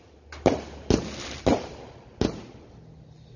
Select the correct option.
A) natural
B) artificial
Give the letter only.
A